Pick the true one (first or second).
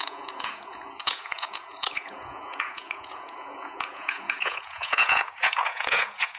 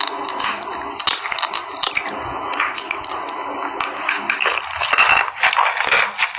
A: second